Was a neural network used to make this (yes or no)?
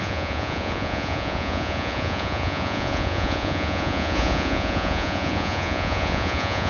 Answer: yes